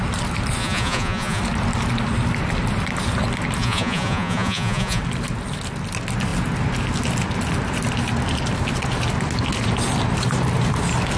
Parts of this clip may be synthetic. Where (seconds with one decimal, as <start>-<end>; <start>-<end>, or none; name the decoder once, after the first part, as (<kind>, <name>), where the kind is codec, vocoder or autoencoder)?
0.6-1.4 (vocoder, Vocos); 3.6-5.0